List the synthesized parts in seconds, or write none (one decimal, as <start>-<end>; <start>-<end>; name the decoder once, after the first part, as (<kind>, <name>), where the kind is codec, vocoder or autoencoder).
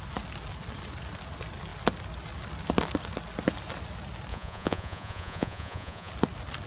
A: 4.3-6.1 (vocoder, Vocos)